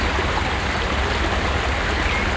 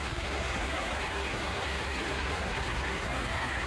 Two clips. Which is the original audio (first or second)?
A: first